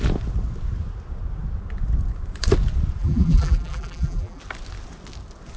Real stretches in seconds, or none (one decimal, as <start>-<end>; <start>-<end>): 0.0-3.0; 4.4-5.6